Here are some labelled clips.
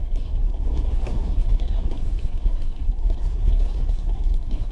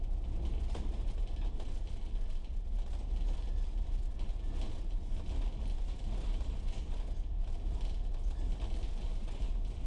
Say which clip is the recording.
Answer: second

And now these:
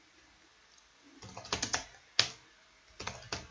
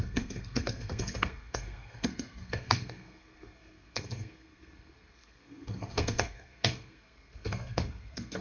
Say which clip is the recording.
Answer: first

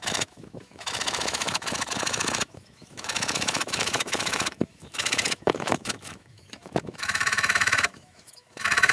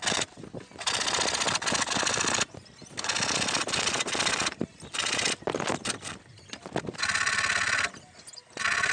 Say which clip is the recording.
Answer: second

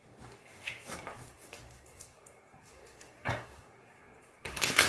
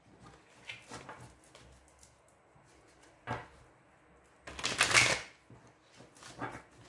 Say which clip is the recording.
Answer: second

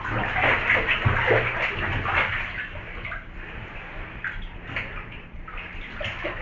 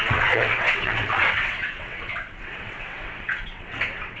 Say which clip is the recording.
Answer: first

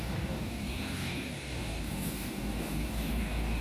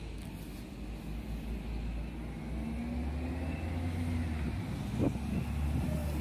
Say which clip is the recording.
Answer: second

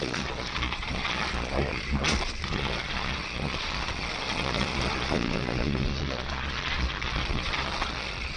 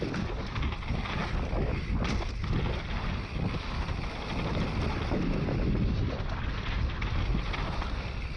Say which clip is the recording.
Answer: second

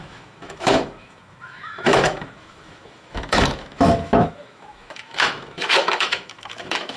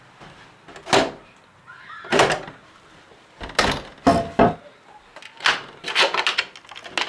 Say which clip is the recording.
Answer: second